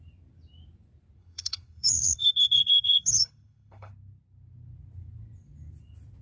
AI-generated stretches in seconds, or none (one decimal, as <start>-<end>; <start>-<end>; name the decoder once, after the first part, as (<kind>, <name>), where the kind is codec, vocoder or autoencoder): 1.2-3.9 (codec, HILCodec)